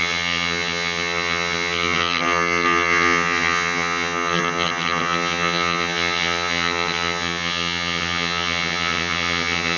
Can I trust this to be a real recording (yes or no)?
no